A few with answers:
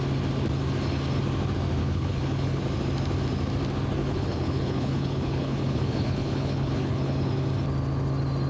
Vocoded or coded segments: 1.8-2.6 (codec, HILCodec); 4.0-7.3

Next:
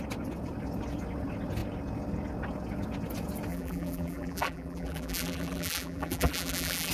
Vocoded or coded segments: 3.5-6.9 (vocoder, BigVGAN v2)

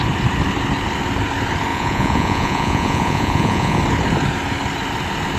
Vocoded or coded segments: 1.7-3.8 (vocoder, Vocos)

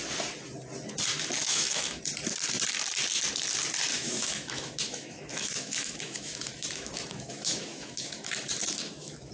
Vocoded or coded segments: 1.4-2.0 (autoencoder, DAC-VAE); 3.9-9.3

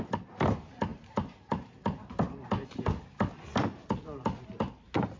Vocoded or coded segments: 0.9-2.5 (vocoder, BigVGAN v2)